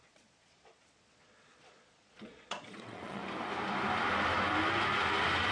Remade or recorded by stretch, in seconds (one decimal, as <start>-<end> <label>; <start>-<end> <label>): 0.0-3.2 remade; 3.2-5.5 recorded